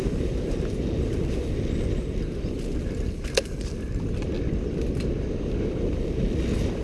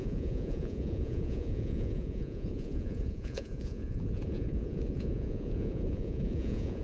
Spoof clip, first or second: second